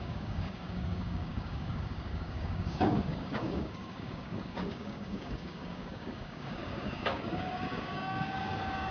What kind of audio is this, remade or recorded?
remade